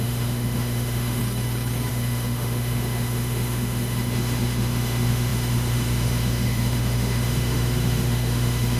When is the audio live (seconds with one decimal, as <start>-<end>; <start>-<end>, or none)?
1.2-1.9